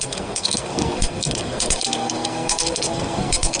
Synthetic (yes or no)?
yes